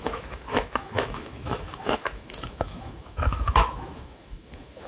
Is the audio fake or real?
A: fake